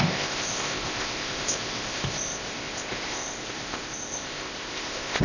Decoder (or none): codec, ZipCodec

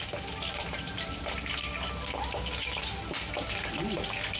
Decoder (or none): none